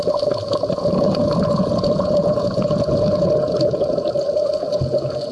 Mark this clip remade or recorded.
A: remade